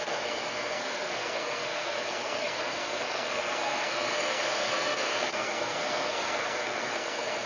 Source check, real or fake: fake